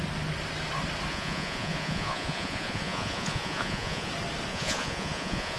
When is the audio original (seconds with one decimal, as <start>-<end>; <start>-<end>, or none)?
0.0-1.1; 4.1-4.5